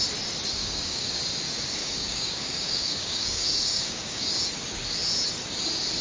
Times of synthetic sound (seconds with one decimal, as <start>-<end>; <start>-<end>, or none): 0.6-1.2; 1.8-4.3

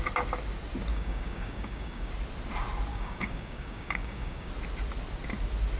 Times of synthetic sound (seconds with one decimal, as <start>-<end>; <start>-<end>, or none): 0.9-2.1; 2.9-4.5

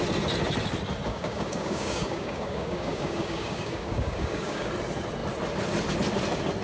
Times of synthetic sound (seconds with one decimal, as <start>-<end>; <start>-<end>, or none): 1.1-4.7